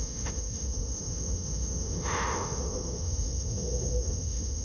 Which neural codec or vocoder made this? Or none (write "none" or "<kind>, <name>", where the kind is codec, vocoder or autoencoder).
autoencoder, DAC-VAE